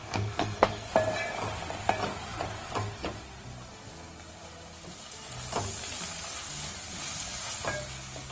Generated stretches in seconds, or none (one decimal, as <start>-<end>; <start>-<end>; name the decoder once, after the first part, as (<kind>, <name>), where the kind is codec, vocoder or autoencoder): 0.0-0.9 (codec, SNAC)